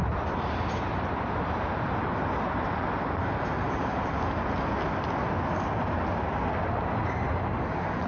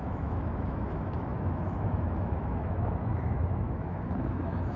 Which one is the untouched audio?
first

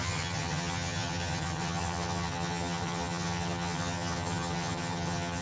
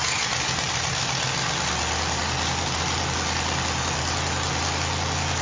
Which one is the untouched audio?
second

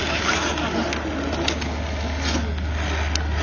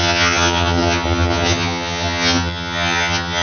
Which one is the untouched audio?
first